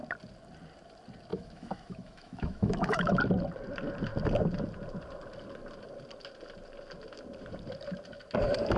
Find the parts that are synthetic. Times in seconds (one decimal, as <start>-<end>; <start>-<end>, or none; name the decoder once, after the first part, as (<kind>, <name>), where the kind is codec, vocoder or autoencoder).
1.3-3.1 (autoencoder, DAC-VAE)